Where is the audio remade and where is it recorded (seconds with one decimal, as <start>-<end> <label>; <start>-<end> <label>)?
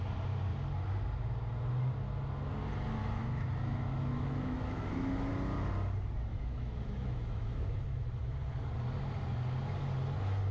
0.0-3.0 recorded; 3.0-5.3 remade; 5.3-6.3 recorded; 6.3-8.4 remade; 8.4-10.5 recorded